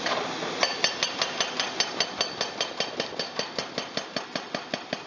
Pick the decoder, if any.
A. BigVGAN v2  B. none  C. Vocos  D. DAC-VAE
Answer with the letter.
B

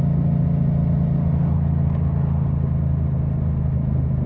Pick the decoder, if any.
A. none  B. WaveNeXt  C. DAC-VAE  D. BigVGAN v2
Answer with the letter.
A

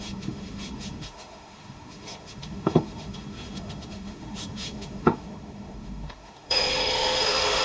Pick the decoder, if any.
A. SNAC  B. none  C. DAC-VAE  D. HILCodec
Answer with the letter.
C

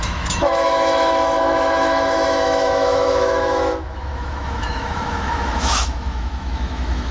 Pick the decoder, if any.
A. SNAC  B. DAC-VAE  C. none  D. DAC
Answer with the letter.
B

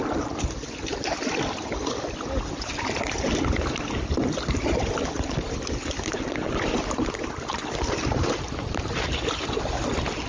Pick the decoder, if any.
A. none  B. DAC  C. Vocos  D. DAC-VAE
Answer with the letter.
A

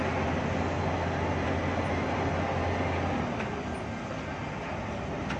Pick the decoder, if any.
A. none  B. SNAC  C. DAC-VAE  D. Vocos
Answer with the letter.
A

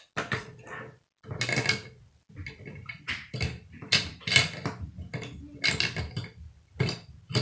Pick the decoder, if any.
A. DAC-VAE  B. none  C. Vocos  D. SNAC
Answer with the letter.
B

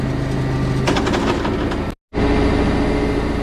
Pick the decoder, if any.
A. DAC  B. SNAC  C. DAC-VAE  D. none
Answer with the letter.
D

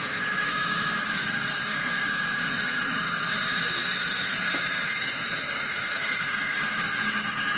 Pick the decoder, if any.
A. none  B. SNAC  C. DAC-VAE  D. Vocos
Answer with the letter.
C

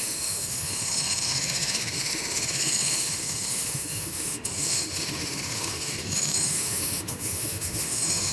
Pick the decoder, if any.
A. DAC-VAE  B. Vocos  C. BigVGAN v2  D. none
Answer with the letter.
A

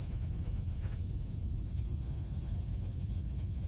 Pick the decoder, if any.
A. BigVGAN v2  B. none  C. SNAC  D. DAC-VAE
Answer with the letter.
D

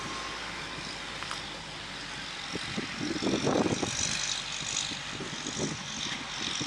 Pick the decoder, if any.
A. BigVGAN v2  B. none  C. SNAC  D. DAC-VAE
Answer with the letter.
B